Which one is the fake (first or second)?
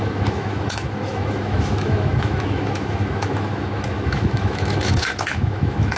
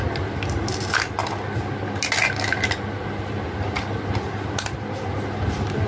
first